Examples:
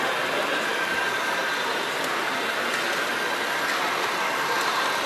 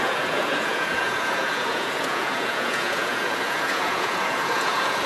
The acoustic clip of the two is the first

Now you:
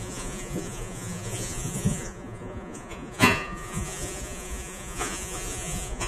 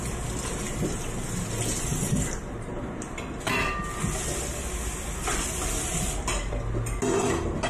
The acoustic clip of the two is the second